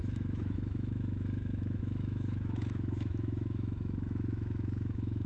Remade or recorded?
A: remade